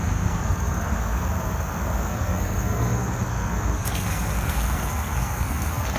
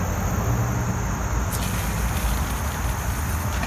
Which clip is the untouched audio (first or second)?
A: second